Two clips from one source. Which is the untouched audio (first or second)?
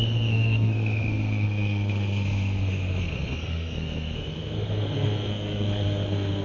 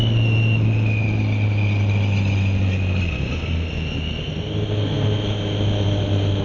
second